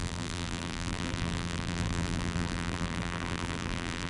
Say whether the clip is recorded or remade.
remade